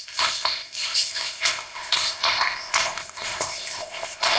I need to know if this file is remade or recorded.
remade